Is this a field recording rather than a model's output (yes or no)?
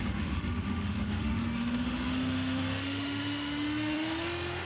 no